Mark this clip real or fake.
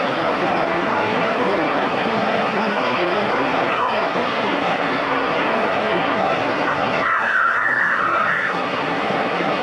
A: fake